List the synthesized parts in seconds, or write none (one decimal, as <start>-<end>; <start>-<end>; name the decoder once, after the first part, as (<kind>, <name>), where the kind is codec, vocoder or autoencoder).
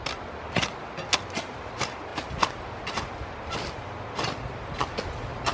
none